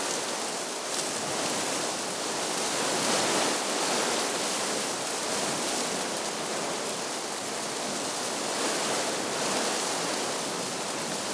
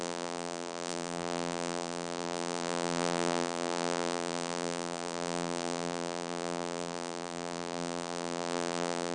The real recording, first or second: first